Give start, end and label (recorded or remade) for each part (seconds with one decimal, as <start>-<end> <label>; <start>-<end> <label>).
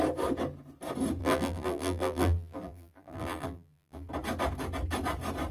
0.0-1.2 recorded; 1.2-4.1 remade; 4.1-5.5 recorded